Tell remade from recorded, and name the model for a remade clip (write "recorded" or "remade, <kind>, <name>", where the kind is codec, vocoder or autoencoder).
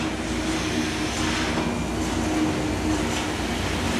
recorded